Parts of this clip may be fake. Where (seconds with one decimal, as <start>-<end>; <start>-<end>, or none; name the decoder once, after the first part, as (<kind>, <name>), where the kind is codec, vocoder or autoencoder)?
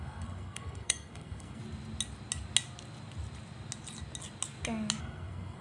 0.0-1.6 (codec, SNAC); 5.0-5.6